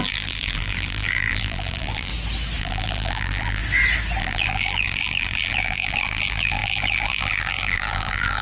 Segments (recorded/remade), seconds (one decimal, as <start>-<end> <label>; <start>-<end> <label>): 0.0-2.1 remade; 2.1-2.6 recorded; 2.6-3.6 remade; 3.6-4.2 recorded; 4.2-8.4 remade